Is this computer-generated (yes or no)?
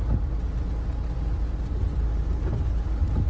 no